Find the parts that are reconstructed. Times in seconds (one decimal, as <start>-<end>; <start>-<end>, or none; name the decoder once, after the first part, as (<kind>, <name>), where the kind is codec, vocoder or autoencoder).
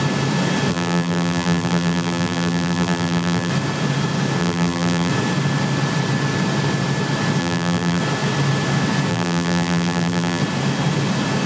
0.7-3.5 (vocoder, BigVGAN v2); 4.4-5.1; 7.4-8.0; 9.1-10.4